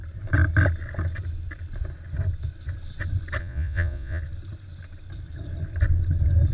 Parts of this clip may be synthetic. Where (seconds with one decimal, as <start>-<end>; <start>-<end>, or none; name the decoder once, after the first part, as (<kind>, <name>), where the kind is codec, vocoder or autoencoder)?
3.4-4.2 (vocoder, Vocos)